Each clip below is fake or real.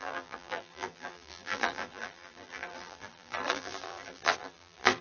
fake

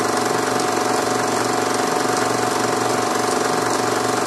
real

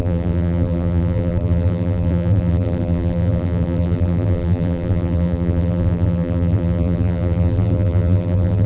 fake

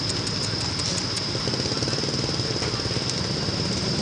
fake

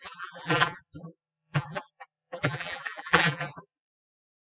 fake